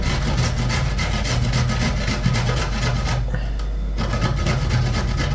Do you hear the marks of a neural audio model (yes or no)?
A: no